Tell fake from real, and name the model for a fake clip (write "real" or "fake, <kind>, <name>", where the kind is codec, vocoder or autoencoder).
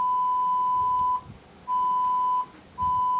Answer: real